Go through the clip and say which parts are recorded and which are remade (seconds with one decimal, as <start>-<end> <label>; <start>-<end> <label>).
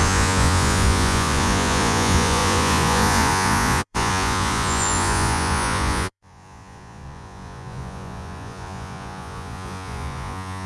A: 0.0-10.7 remade